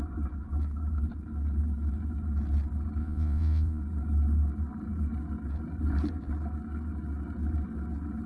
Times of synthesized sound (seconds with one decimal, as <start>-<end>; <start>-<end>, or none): 3.0-3.8